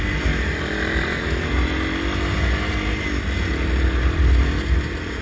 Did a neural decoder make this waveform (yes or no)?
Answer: no